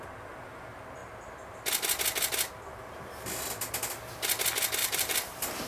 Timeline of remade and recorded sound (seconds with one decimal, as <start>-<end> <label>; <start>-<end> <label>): 0.0-4.8 recorded; 4.8-5.7 remade